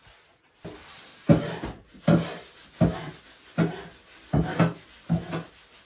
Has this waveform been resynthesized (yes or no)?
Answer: no